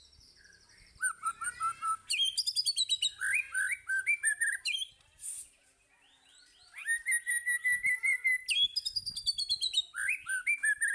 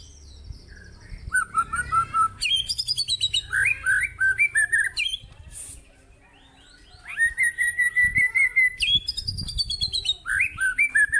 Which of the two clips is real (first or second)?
first